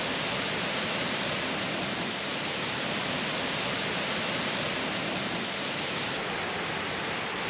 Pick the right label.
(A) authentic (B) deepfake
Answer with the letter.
A